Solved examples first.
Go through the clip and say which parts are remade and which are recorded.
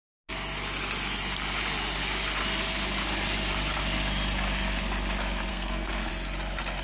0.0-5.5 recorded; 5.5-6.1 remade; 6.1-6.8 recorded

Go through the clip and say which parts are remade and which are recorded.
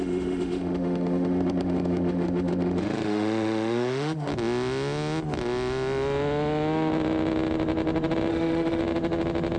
0.0-4.3 remade; 4.3-8.3 recorded; 8.3-8.8 remade; 8.8-9.6 recorded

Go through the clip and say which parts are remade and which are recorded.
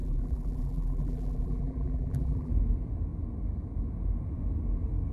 0.0-2.5 remade; 2.5-5.1 recorded